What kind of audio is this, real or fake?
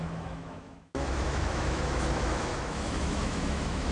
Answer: fake